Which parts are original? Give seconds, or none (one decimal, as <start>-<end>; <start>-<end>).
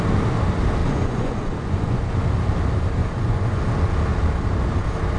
0.0-0.8; 2.1-3.0; 3.6-5.2